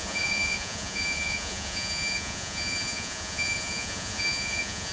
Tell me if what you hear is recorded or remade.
remade